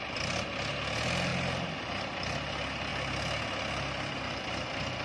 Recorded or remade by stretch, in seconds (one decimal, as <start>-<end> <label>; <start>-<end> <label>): 0.0-5.0 recorded